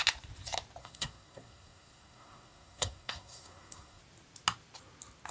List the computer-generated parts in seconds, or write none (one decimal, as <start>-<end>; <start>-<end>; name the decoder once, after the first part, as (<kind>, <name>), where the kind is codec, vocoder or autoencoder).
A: 0.8-4.0 (codec, SNAC)